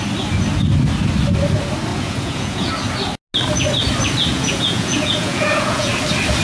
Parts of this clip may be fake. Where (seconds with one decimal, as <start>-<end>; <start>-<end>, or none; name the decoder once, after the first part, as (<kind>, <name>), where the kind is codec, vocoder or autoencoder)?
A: 1.9-2.7 (vocoder, Vocos); 4.3-5.9